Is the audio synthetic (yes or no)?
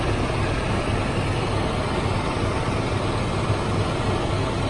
no